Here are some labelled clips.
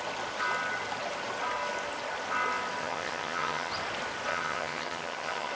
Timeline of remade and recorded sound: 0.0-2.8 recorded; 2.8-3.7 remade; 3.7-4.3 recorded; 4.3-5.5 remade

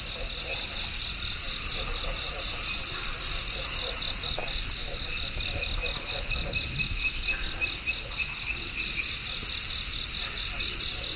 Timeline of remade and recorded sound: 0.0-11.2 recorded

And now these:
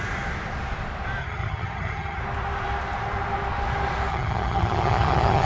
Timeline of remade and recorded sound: 0.0-1.2 recorded; 1.2-2.2 remade; 2.2-4.1 recorded; 4.1-5.5 remade